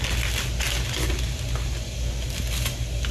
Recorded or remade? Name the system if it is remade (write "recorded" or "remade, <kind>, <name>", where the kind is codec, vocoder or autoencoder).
recorded